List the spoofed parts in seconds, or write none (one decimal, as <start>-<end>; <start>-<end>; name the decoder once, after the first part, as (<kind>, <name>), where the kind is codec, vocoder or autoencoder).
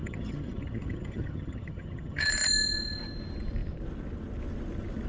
0.0-2.3 (vocoder, HiFi-GAN)